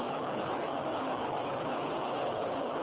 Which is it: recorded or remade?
remade